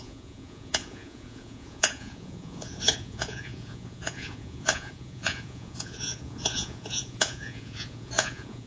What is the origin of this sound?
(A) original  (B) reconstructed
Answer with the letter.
B